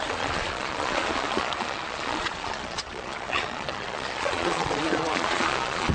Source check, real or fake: fake